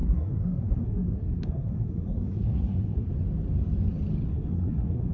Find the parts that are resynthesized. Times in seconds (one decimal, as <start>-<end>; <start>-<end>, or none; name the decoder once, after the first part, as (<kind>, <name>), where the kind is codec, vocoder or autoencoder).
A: 0.0-3.1 (codec, SNAC); 4.3-5.1